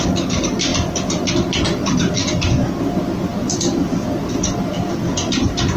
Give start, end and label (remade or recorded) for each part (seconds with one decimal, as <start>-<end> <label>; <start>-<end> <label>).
0.0-5.8 remade